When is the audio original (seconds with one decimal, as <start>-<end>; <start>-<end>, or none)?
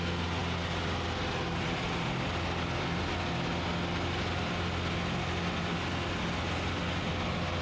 0.0-7.6